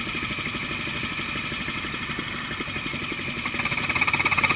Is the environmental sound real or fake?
real